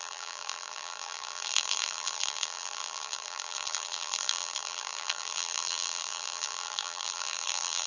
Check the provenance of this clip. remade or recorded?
remade